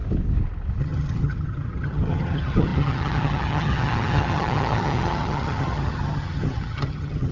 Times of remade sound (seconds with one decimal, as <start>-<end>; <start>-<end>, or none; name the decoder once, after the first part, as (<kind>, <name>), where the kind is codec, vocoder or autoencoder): 0.8-7.3 (vocoder, HiFi-GAN)